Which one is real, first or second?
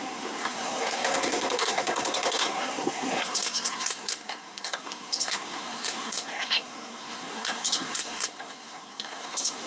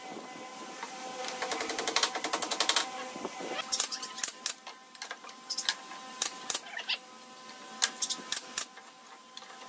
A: second